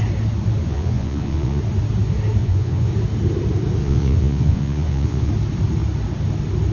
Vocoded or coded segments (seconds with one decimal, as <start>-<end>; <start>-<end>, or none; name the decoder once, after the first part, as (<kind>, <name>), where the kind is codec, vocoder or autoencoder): 0.6-1.6 (vocoder, Vocos); 2.4-2.9; 3.8-5.3